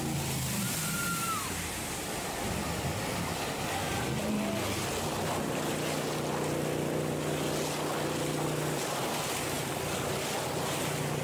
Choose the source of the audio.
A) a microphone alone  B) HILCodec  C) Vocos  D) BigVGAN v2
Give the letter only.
A